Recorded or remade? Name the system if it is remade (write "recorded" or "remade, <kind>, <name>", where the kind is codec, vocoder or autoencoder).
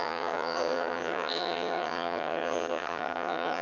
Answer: remade, vocoder, HiFi-GAN